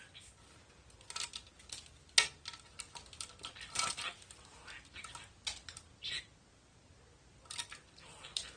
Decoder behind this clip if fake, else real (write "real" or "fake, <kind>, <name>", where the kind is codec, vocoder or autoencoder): real